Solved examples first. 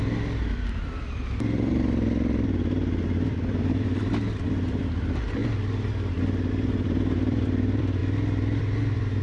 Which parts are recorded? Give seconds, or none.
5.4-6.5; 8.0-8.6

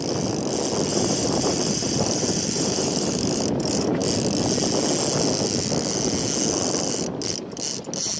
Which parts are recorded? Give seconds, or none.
0.0-0.9; 3.4-8.2

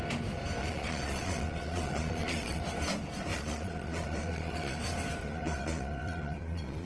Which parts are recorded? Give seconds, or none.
0.0-0.6; 2.6-3.3; 4.8-5.2

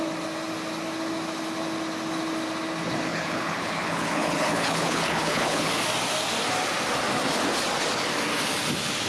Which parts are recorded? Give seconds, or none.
0.0-3.1; 5.7-9.1